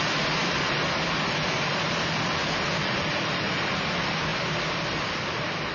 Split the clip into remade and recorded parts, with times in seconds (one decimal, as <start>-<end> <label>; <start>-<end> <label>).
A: 0.0-5.7 recorded